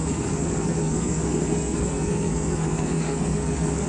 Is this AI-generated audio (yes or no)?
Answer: yes